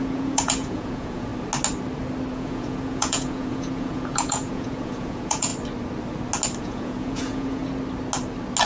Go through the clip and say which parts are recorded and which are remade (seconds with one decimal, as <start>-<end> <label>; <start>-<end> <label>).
0.0-1.3 remade; 1.3-2.3 recorded; 2.3-5.5 remade; 5.5-6.6 recorded; 6.6-7.6 remade; 7.6-8.7 recorded